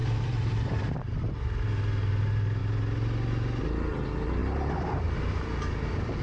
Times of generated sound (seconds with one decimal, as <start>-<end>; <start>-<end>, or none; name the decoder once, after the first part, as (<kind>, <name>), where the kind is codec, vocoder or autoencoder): 0.0-1.3 (vocoder, BigVGAN v2); 4.4-6.2